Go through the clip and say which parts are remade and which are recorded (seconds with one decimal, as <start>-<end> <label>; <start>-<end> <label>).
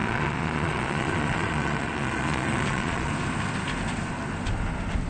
0.0-3.1 remade; 3.1-5.1 recorded